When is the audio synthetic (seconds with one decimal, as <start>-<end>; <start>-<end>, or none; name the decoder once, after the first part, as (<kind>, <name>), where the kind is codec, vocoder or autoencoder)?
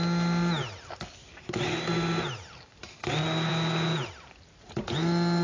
none